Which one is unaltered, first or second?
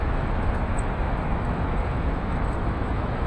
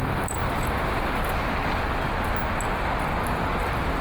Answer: second